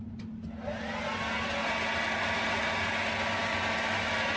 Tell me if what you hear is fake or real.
real